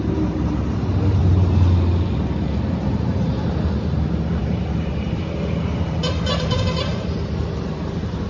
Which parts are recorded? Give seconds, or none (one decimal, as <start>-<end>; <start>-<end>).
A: 1.2-2.9; 6.9-7.4